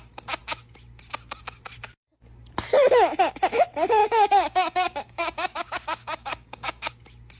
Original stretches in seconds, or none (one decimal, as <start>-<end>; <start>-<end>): 0.0-4.0; 6.9-7.4